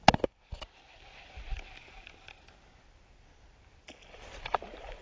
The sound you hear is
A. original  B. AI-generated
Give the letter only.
A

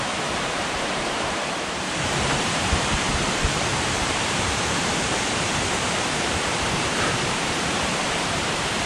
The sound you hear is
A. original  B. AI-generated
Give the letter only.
B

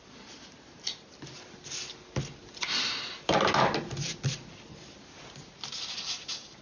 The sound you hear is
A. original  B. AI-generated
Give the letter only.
A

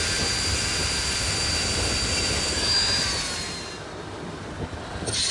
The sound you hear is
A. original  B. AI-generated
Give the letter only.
A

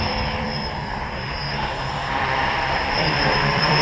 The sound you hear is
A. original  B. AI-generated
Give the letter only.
B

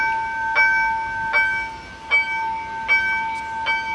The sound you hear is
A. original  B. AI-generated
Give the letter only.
A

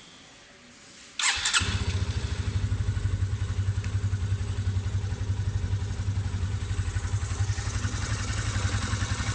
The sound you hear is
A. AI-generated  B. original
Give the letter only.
B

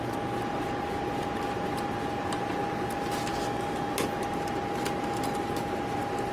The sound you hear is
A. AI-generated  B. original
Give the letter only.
B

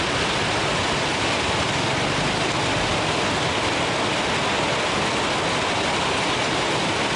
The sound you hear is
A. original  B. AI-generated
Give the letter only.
A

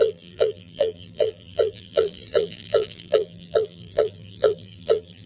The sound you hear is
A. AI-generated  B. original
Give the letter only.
A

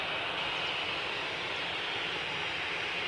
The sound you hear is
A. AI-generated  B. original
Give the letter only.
B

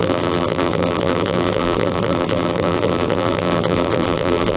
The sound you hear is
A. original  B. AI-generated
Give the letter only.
B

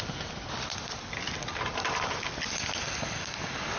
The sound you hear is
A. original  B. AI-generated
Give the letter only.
A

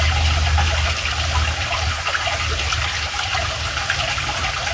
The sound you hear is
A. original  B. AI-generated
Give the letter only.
A